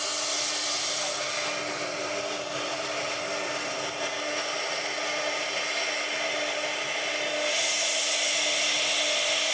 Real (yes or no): yes